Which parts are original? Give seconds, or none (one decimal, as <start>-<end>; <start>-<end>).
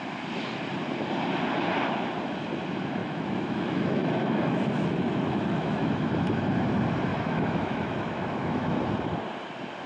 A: 0.0-3.0; 6.1-7.1; 8.8-9.9